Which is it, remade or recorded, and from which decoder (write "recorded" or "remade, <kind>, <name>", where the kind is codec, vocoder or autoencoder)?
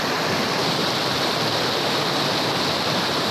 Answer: recorded